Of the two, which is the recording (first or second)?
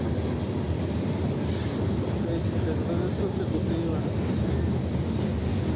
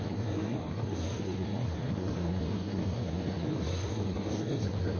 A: first